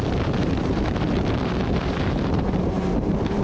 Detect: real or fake fake